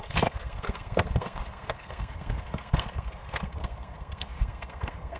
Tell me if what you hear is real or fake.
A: fake